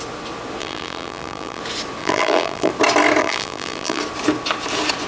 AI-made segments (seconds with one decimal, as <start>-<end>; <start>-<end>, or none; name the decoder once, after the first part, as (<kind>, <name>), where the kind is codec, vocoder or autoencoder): 0.6-1.6 (vocoder, BigVGAN v2); 2.0-2.7; 3.2-4.0